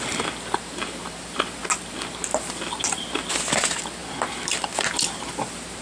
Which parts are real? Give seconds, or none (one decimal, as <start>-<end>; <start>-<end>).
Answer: 0.0-5.8